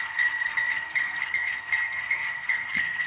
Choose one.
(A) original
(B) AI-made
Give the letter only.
B